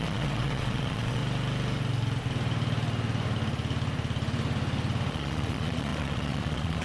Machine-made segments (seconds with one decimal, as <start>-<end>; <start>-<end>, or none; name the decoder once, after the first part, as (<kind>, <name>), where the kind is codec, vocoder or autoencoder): 0.0-1.2 (vocoder, Vocos); 5.1-6.8